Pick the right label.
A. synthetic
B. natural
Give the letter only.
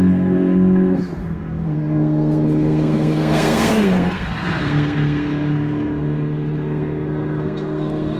A